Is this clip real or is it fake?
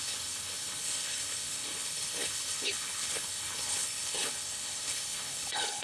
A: fake